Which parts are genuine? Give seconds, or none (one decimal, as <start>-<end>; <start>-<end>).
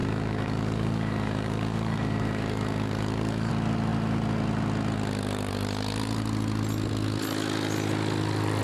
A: 3.5-8.6